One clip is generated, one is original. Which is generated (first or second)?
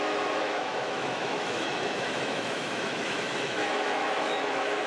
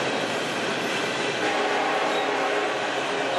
first